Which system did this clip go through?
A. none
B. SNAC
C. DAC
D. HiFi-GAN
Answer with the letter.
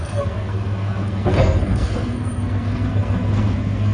B